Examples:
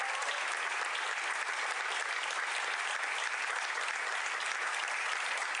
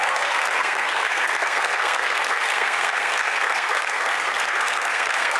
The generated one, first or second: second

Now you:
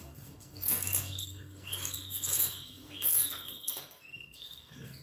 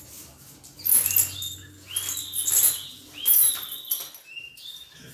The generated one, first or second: first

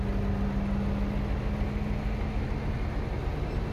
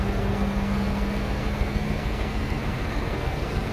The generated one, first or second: second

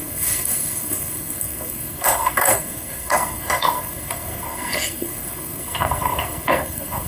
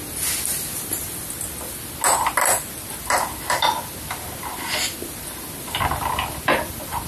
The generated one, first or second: first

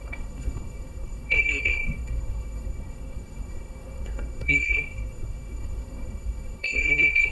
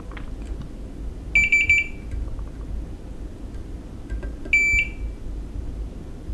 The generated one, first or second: first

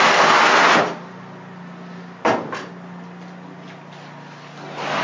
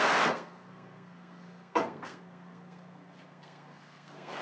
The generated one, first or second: second